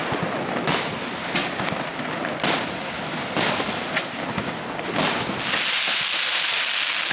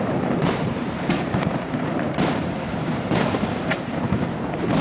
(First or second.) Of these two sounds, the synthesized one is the second